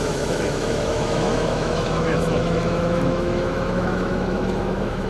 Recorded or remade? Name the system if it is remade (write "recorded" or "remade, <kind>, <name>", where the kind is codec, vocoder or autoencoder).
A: remade, autoencoder, DAC-VAE